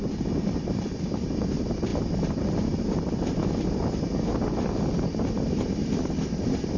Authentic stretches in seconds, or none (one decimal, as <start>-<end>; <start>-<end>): 0.0-6.8

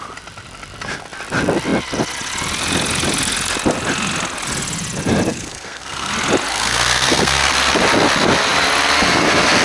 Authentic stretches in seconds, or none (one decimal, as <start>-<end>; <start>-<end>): 0.0-5.3; 6.1-6.5; 7.5-9.6

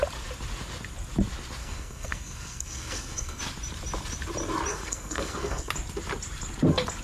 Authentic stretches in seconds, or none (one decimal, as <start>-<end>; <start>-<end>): 0.0-1.6; 3.4-4.7; 5.7-7.0

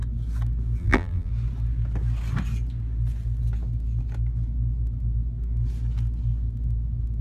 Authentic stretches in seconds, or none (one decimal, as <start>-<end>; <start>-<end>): 0.0-0.8; 1.3-7.2

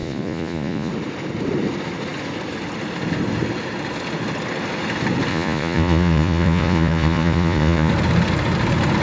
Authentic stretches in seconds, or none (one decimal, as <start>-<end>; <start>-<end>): 0.9-5.3; 7.9-9.0